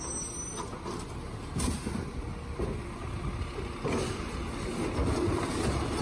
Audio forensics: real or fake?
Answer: real